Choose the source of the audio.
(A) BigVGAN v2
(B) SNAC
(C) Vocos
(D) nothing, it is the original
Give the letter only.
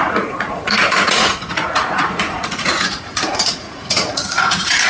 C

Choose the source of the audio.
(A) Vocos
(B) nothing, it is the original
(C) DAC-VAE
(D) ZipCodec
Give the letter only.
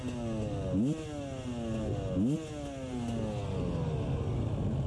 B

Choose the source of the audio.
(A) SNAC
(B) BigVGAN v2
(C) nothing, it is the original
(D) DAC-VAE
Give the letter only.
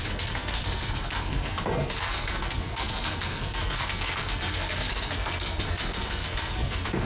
A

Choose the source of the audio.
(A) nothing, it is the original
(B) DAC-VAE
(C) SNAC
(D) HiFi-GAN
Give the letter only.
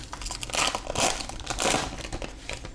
A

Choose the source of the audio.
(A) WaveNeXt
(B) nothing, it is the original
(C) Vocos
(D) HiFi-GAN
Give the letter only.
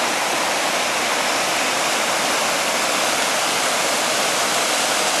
B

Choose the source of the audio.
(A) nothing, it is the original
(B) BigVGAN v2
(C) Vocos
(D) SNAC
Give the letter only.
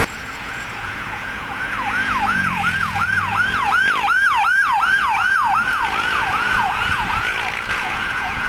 C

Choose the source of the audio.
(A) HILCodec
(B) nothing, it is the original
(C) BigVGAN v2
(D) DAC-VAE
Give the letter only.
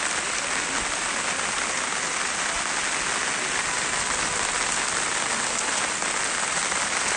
B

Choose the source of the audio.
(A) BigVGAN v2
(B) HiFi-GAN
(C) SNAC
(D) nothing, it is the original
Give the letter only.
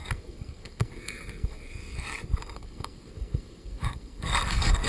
C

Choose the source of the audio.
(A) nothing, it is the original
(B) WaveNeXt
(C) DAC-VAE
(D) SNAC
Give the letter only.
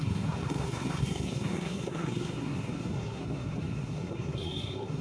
D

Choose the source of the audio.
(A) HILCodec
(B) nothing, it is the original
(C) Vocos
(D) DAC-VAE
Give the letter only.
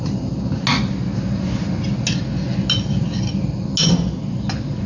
B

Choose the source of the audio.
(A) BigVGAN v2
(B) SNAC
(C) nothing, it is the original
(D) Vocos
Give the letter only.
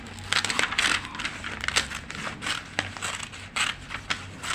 C